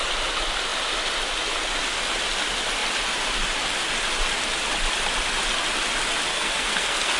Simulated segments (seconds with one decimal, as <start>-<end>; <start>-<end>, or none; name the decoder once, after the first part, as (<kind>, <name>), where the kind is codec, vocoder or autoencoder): 6.3-7.2 (codec, SNAC)